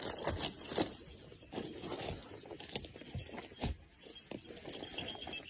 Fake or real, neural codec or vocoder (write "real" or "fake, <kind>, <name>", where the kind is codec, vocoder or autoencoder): real